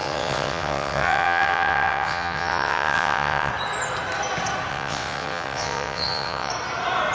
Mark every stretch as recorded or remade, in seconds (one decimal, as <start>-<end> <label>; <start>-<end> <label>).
0.0-3.5 remade; 3.5-4.7 recorded; 4.7-6.5 remade; 6.5-7.1 recorded